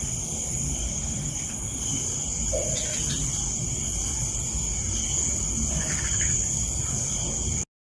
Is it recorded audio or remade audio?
recorded